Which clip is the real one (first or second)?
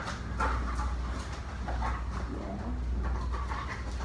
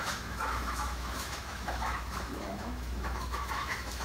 first